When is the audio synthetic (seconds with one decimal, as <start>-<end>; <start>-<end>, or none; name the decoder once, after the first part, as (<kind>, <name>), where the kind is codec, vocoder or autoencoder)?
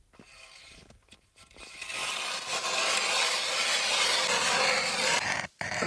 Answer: none